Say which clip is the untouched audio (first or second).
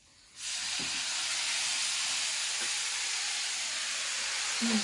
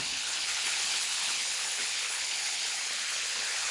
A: first